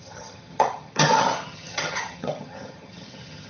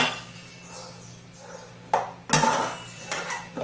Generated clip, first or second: first